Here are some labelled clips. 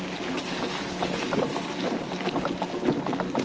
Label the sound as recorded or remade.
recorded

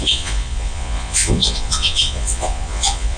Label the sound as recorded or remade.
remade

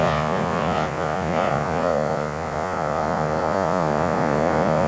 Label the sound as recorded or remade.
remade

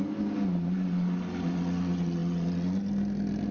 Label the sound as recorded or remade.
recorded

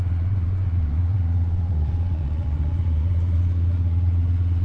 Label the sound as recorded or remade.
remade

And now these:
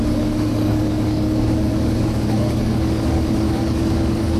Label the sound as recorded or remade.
remade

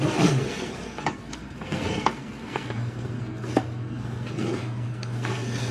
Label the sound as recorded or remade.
remade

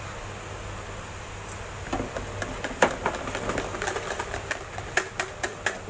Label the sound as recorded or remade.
recorded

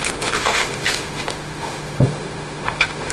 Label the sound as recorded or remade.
remade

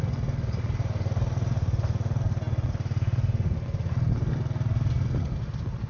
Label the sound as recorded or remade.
recorded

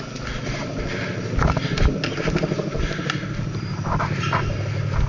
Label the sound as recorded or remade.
recorded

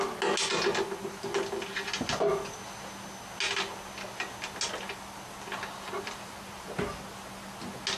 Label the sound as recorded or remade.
recorded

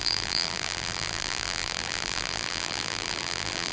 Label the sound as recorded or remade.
remade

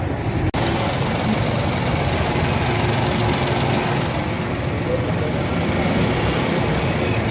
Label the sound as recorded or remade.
recorded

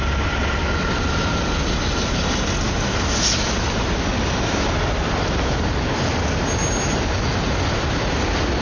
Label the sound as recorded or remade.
recorded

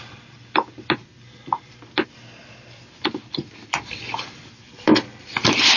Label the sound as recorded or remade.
recorded